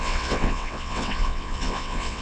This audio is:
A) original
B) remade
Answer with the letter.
B